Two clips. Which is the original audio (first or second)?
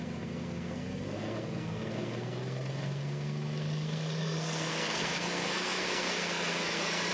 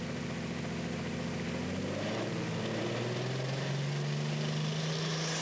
second